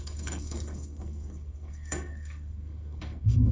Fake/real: fake